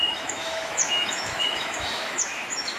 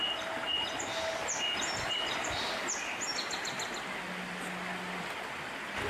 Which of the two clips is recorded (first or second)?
second